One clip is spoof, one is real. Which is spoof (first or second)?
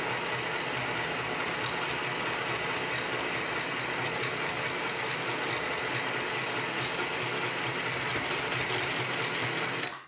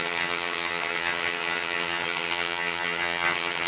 second